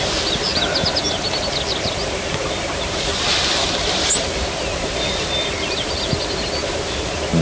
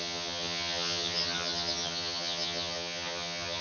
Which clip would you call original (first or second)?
first